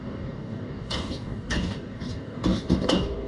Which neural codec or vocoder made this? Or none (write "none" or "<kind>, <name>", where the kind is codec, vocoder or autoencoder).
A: codec, DAC